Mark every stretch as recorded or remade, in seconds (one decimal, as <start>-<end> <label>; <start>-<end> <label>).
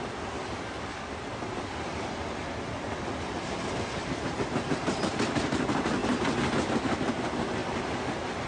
0.0-8.5 recorded